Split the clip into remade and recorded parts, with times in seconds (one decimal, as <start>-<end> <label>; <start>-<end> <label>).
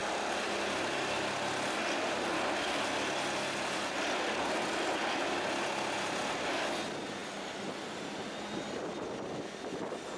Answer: 0.0-10.2 recorded